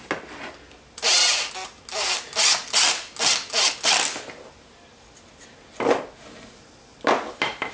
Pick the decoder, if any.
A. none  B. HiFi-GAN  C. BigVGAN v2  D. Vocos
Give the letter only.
A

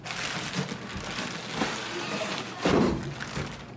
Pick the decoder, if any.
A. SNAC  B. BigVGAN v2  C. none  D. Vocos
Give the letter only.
C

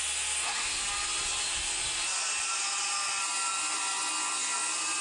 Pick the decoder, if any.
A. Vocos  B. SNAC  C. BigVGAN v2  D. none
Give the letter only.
D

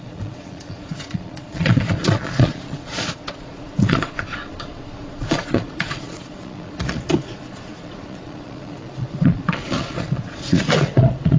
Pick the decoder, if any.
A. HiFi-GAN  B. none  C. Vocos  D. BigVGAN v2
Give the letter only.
C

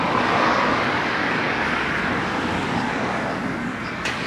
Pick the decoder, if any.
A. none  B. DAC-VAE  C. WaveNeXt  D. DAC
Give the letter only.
D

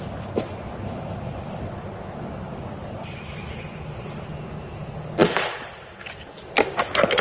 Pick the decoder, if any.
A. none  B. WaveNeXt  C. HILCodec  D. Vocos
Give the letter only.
A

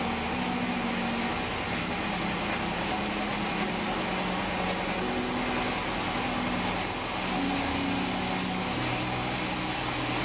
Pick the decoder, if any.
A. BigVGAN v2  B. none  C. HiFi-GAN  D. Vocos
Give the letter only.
B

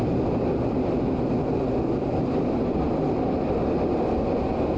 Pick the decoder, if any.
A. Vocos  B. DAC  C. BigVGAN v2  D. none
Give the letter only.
D